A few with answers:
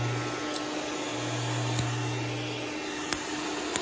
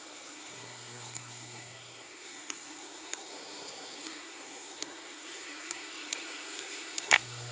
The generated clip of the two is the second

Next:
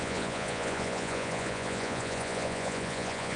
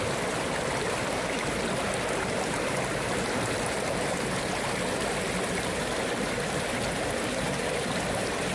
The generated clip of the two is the first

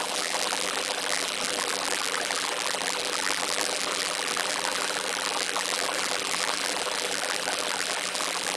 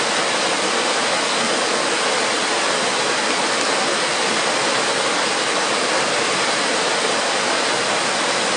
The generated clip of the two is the first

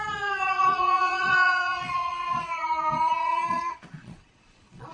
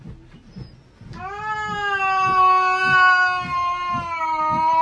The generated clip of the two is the first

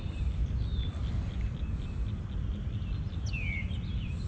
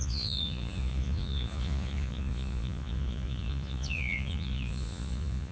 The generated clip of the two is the second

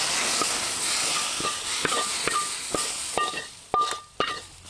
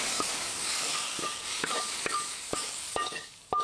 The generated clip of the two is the second